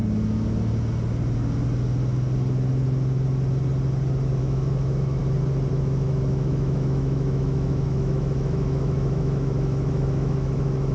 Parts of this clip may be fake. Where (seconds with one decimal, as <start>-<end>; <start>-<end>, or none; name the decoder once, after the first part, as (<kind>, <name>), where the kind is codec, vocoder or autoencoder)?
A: 4.4-5.2 (autoencoder, DAC-VAE); 5.7-10.9